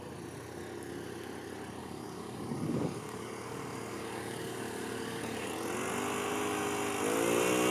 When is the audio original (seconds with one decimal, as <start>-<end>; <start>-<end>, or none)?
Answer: 0.0-1.8; 5.5-7.7